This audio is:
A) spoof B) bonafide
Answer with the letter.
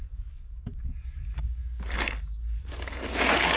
A